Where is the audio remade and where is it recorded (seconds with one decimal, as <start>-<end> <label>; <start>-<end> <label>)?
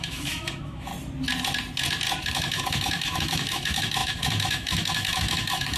0.0-0.9 remade; 0.9-2.3 recorded; 2.3-5.8 remade